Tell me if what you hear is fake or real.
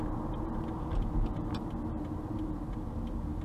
real